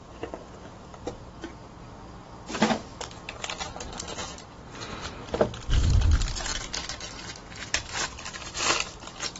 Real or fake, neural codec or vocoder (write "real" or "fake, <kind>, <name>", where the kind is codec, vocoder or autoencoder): real